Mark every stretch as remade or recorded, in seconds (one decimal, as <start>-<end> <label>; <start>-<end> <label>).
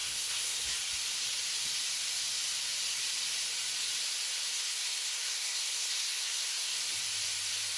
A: 0.0-0.8 remade; 0.8-4.5 recorded; 4.5-6.8 remade; 6.8-7.8 recorded